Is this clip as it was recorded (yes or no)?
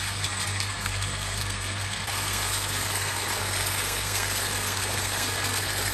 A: no